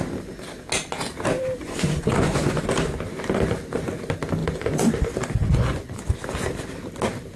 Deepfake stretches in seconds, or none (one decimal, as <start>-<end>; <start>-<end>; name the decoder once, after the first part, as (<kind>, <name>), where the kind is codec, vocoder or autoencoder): 1.6-2.6 (vocoder, Vocos); 4.4-4.9; 5.4-6.0